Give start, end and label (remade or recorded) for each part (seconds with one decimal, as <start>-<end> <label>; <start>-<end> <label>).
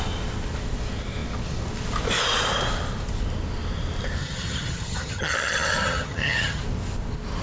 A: 0.0-4.2 recorded; 4.2-6.6 remade; 6.6-7.4 recorded